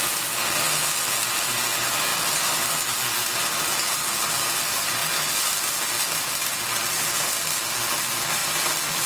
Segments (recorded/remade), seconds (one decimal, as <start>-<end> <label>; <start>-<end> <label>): 0.0-8.4 recorded; 8.4-9.1 remade